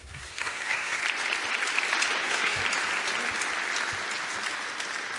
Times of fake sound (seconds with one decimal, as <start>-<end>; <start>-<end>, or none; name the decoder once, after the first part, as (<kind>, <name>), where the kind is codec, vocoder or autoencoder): 0.0-1.0 (codec, SNAC); 2.2-2.6